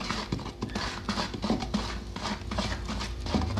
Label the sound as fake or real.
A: real